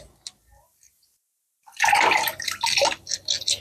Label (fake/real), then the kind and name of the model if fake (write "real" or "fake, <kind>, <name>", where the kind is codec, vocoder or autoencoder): real